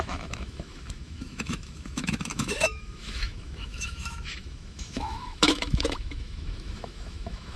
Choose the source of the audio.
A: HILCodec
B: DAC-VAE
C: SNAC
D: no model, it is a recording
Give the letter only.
B